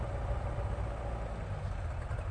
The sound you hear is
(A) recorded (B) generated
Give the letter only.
A